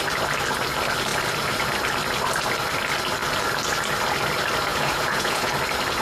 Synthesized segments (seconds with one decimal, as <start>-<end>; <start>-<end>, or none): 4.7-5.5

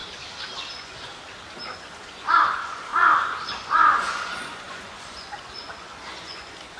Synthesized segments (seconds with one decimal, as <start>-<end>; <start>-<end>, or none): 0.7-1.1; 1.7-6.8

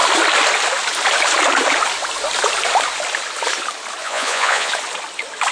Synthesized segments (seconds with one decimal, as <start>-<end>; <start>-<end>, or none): 4.0-4.7

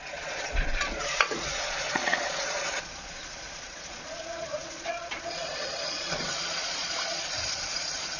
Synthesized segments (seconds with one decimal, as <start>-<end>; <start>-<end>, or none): 0.0-8.2